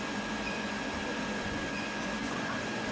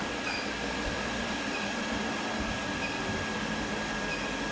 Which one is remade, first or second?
first